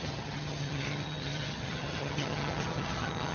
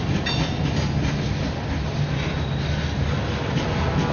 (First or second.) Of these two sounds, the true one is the second